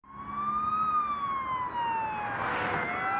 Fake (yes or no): no